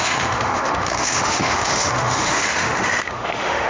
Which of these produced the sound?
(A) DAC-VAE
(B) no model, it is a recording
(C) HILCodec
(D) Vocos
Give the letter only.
A